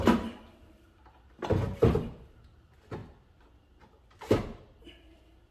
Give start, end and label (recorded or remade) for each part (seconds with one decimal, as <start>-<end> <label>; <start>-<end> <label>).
0.0-5.5 recorded